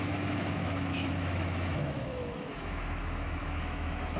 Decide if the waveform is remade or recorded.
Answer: remade